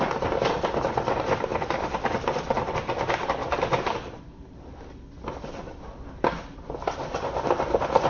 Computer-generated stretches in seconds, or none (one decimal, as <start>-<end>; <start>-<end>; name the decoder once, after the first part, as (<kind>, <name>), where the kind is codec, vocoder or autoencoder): 1.5-2.7 (vocoder, BigVGAN v2)